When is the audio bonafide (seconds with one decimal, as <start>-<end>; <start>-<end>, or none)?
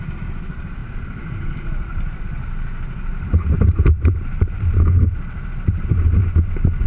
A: 0.0-3.1; 5.8-6.9